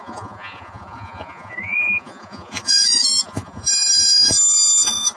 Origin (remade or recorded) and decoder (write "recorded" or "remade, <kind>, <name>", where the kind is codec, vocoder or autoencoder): remade, vocoder, Vocos